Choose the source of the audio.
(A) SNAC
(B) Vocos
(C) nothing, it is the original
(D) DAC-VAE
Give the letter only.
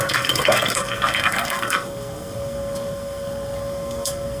A